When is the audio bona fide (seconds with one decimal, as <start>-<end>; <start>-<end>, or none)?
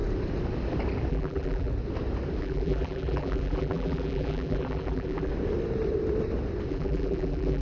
0.0-1.1; 1.7-2.4; 5.3-6.7